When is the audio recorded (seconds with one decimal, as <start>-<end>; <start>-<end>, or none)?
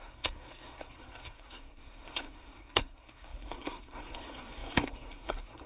none